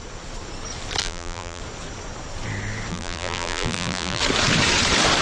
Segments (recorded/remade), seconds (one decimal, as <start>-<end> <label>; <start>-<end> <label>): 0.0-1.0 recorded; 1.0-1.6 remade; 1.6-2.9 recorded; 2.9-4.2 remade; 4.2-5.2 recorded